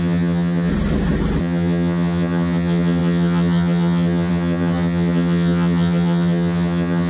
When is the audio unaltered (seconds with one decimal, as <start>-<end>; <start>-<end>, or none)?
0.7-1.4